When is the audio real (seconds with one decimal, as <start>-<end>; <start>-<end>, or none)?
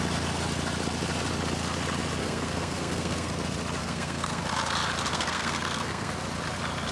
0.0-2.2; 3.3-3.8; 4.4-5.1; 6.1-6.9